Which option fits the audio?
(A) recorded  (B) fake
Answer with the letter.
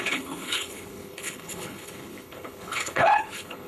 B